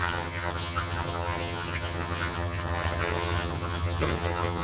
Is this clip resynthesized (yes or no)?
yes